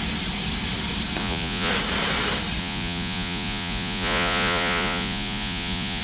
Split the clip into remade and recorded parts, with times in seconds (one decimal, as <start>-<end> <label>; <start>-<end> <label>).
0.0-1.2 recorded; 1.2-1.7 remade; 1.7-2.6 recorded; 2.6-6.0 remade